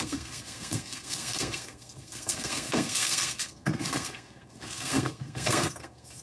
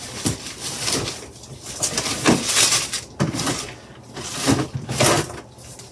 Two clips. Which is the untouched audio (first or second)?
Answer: second